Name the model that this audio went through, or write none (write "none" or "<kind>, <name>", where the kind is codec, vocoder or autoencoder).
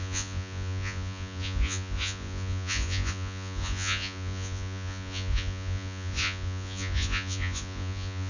vocoder, Vocos